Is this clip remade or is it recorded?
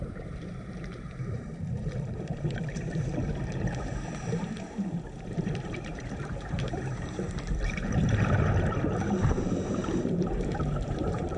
remade